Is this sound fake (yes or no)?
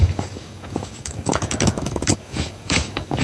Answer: yes